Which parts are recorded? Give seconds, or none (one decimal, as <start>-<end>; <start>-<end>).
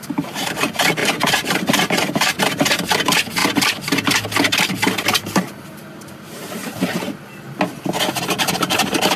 3.4-5.9; 6.6-8.4